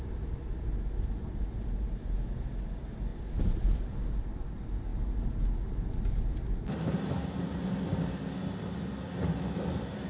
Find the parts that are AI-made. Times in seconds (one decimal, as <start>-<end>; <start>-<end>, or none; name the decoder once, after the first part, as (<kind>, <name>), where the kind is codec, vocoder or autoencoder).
none